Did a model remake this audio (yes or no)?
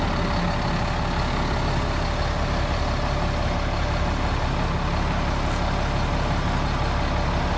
no